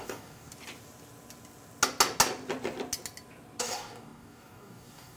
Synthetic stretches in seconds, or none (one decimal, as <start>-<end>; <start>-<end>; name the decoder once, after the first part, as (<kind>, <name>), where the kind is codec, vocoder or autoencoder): 0.0-0.5 (codec, DAC); 3.6-5.2